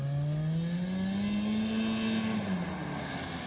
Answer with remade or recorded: recorded